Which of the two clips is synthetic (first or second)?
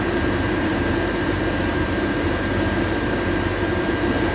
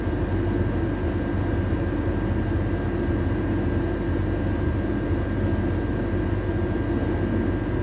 first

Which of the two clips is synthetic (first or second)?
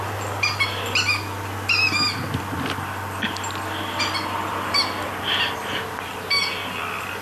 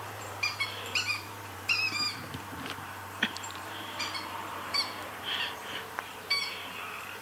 second